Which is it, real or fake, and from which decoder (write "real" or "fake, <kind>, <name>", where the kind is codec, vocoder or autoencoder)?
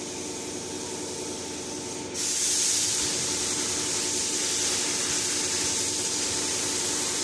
real